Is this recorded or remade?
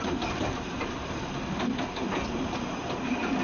recorded